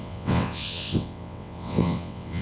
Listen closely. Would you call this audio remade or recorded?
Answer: remade